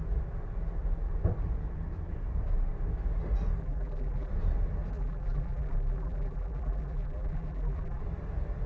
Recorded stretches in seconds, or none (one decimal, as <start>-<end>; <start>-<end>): 0.0-3.6; 4.3-4.9; 8.0-8.7